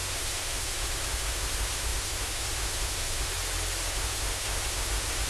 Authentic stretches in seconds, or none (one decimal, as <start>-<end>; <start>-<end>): 3.3-3.9